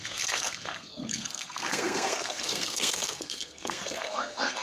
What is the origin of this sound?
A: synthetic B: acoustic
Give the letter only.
A